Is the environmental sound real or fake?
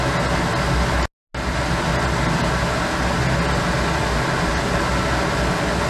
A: real